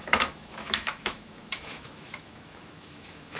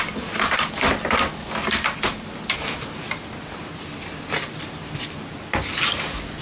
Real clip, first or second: second